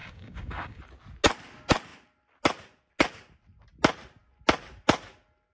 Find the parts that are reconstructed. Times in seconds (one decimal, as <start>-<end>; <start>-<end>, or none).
0.0-0.8